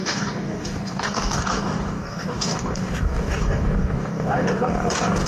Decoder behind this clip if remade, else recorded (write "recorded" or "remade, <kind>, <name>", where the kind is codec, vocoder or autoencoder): remade, codec, DAC